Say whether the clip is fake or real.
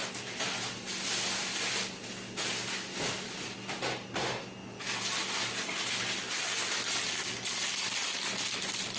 real